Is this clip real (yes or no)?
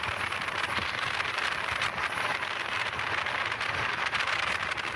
yes